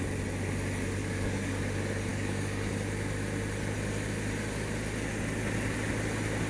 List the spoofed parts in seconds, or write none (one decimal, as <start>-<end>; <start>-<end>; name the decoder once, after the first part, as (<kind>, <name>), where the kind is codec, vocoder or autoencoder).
1.0-1.6 (codec, DAC); 2.1-2.7